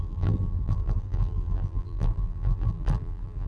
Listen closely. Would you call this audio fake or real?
fake